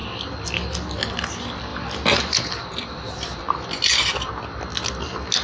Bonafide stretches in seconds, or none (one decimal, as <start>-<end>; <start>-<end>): 0.0-1.7; 4.3-5.4